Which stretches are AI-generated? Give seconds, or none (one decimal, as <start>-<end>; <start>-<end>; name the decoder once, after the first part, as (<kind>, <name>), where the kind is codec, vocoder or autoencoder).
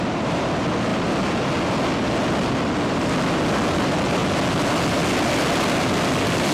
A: none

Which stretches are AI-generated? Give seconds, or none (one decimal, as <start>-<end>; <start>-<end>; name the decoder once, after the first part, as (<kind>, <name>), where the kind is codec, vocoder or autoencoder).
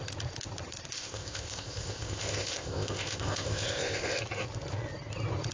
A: 0.9-4.2 (codec, ZipCodec)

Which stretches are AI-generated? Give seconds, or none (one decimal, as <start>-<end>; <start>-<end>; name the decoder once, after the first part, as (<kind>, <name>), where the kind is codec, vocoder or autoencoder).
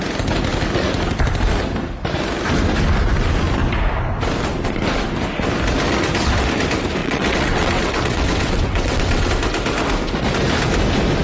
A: 7.0-9.3 (vocoder, WaveNeXt)